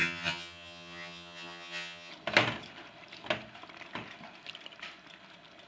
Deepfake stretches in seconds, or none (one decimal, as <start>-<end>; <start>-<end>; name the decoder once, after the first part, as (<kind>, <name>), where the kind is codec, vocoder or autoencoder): 0.0-2.1 (vocoder, HiFi-GAN)

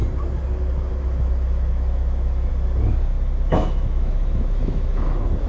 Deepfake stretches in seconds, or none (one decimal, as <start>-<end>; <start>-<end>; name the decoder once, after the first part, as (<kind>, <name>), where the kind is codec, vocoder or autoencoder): 0.9-2.5 (autoencoder, DAC-VAE); 3.5-5.5

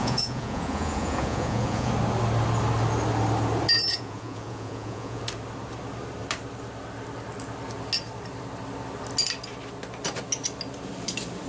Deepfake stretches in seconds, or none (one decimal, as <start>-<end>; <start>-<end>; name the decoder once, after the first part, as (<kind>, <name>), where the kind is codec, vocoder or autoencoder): 0.0-1.9 (vocoder, Vocos); 3.9-5.2

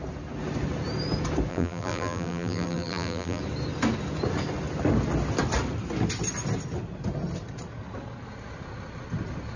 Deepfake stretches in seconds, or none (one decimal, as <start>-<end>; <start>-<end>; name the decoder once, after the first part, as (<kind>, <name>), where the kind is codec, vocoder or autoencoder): 1.5-3.4 (vocoder, BigVGAN v2)

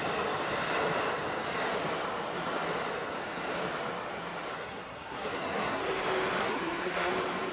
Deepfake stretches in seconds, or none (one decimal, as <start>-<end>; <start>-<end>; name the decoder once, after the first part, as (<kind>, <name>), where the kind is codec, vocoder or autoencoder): 4.5-5.8 (codec, SNAC); 6.4-7.1

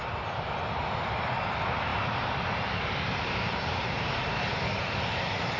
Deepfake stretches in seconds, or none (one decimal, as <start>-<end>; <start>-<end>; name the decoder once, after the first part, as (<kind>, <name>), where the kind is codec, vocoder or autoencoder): 1.9-5.6 (vocoder, BigVGAN v2)

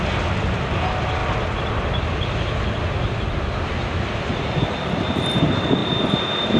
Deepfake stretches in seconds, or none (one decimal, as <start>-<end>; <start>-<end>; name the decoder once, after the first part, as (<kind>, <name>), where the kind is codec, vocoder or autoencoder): none